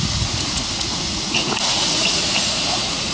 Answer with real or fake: fake